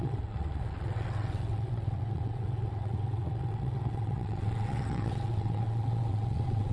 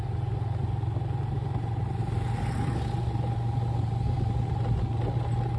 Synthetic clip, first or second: first